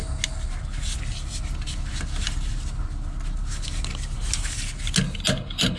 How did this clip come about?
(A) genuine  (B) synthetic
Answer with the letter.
A